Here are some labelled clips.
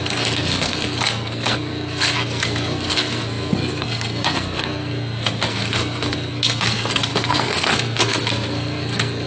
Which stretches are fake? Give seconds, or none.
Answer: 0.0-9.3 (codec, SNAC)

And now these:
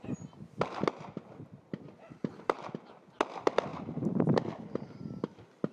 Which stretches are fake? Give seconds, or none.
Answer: 3.7-4.4 (vocoder, BigVGAN v2)

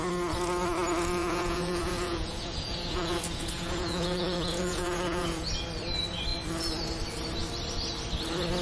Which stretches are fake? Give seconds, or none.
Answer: 1.2-5.5 (vocoder, Vocos)

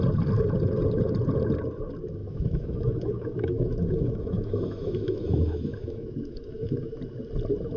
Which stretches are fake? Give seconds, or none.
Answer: 2.2-6.9 (autoencoder, DAC-VAE)